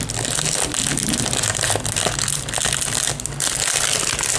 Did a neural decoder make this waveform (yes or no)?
no